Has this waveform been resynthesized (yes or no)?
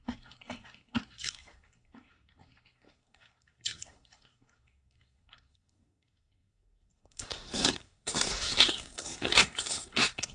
yes